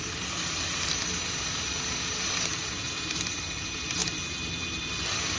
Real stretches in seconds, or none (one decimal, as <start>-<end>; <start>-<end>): 0.0-5.4